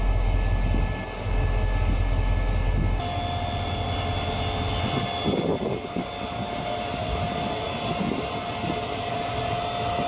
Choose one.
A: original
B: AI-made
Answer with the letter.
A